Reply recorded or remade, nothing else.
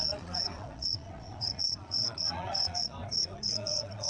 remade